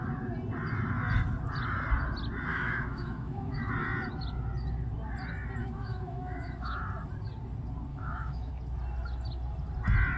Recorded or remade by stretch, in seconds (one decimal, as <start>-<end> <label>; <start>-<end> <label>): 0.0-2.5 recorded; 2.5-3.7 remade; 3.7-5.6 recorded; 5.6-6.8 remade; 6.8-7.9 recorded; 7.9-8.5 remade; 8.5-10.2 recorded